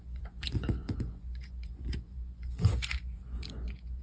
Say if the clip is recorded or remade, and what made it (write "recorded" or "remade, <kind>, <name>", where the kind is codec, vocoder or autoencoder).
remade, vocoder, Vocos